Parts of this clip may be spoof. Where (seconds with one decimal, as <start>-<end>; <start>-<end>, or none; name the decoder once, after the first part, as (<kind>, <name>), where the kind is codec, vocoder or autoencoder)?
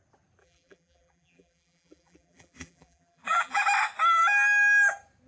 0.4-3.6 (vocoder, BigVGAN v2)